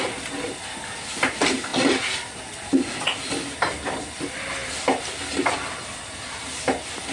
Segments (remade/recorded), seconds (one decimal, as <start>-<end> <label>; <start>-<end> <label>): 0.0-7.1 recorded